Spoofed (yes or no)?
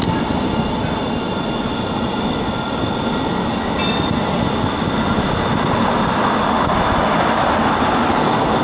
no